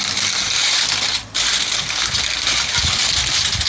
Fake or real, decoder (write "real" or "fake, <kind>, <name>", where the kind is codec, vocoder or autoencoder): real